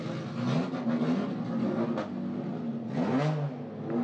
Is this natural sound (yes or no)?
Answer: yes